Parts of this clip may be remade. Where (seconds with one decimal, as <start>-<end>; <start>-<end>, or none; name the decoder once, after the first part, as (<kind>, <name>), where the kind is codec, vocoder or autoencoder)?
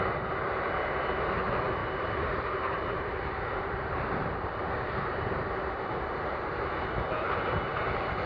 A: 1.8-6.8 (vocoder, BigVGAN v2); 7.7-8.3